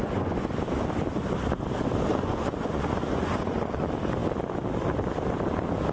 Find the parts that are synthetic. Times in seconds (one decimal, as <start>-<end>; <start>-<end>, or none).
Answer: 0.0-0.5; 2.1-3.8